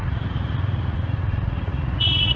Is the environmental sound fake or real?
fake